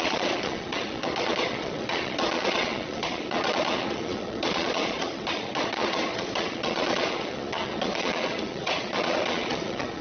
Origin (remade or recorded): remade